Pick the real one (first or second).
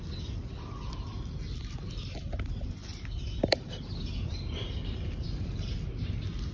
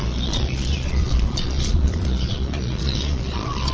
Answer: first